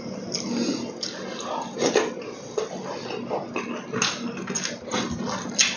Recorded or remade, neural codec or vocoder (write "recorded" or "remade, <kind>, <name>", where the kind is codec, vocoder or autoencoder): recorded